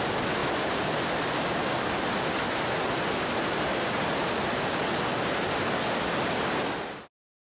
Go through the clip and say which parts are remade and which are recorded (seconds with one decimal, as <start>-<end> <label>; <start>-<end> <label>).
0.0-7.6 recorded